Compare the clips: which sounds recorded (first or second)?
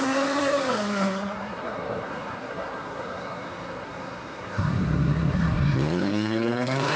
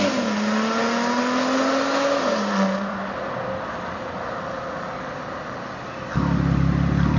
second